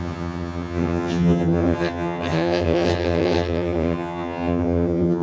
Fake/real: fake